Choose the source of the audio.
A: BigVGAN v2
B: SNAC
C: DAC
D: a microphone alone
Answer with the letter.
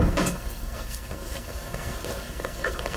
B